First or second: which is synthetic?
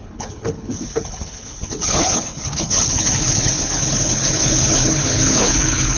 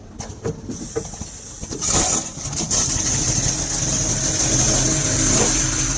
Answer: first